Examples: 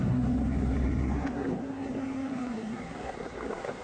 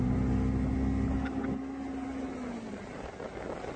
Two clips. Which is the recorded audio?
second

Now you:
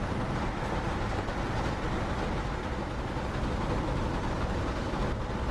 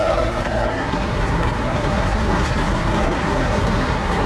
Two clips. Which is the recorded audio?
first